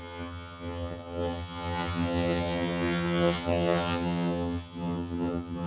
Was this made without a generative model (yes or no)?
no